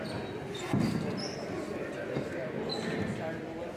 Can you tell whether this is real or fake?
real